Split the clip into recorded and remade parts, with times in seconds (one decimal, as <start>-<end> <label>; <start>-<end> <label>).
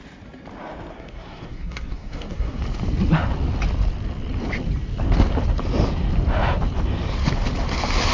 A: 0.0-0.9 recorded; 0.9-2.6 remade; 2.6-8.1 recorded